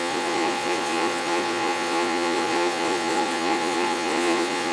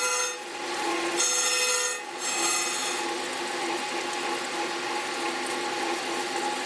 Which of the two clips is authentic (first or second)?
second